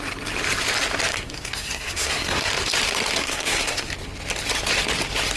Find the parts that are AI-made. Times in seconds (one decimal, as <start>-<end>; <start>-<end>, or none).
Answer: 1.1-2.5; 3.2-3.9

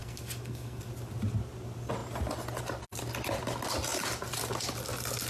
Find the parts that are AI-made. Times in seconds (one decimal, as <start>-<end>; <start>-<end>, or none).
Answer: 0.0-0.9

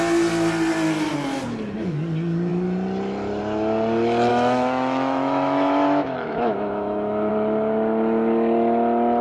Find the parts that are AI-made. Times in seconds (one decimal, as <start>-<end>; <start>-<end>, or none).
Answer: 4.3-7.3

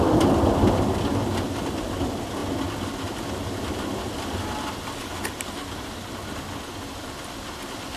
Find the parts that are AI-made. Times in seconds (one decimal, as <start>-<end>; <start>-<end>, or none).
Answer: none